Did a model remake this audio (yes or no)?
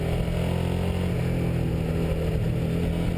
no